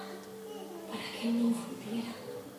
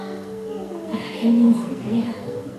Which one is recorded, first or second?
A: first